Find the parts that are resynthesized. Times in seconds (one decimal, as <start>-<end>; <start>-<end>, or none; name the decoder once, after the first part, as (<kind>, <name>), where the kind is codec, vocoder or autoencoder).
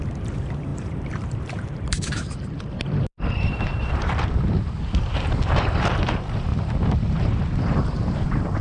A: 0.0-6.5 (vocoder, BigVGAN v2); 7.8-8.6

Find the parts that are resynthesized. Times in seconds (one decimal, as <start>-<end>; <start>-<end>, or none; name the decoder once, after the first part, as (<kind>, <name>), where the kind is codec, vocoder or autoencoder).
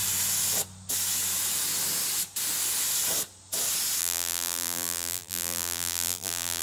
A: 4.0-6.6 (vocoder, BigVGAN v2)